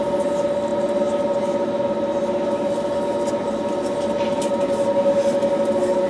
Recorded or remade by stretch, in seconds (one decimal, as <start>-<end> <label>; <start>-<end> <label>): 0.0-6.1 recorded

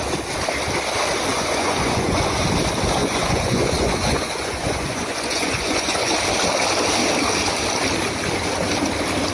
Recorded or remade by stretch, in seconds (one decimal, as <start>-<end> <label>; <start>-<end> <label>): 0.0-1.3 recorded; 1.3-2.4 remade; 2.4-3.0 recorded; 3.0-6.1 remade; 6.1-9.3 recorded

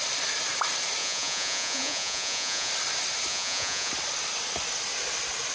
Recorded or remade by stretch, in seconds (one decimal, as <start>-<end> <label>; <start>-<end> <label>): 0.0-1.0 recorded; 1.0-2.7 remade; 2.7-3.3 recorded; 3.3-3.9 remade; 3.9-5.5 recorded

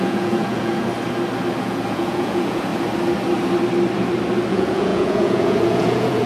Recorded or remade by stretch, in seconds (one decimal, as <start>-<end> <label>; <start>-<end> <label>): 0.0-0.9 remade; 0.9-1.6 recorded; 1.6-2.7 remade; 2.7-4.5 recorded; 4.5-6.3 remade

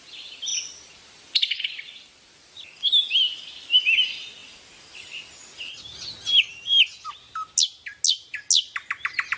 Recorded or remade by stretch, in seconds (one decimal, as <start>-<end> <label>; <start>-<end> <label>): 0.0-9.4 recorded

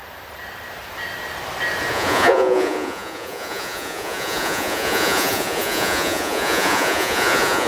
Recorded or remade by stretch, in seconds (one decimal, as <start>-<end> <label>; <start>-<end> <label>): 0.0-1.9 recorded; 1.9-7.7 remade

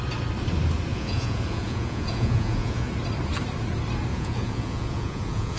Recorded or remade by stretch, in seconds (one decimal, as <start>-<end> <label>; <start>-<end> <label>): 0.0-0.9 recorded; 0.9-2.9 remade; 2.9-4.1 recorded; 4.1-5.6 remade

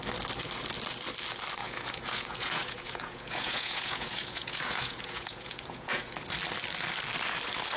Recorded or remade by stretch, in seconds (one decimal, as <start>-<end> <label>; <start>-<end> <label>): 0.0-1.6 recorded; 1.6-6.3 remade; 6.3-7.8 recorded